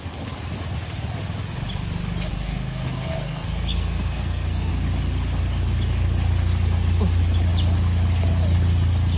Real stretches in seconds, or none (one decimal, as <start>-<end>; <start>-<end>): 0.0-2.3; 4.7-9.2